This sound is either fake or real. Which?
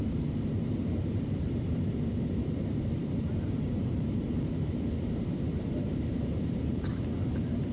fake